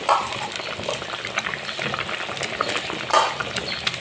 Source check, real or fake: real